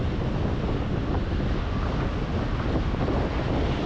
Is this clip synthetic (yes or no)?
no